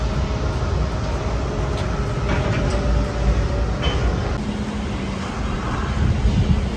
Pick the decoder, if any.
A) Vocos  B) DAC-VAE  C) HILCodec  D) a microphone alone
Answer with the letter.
D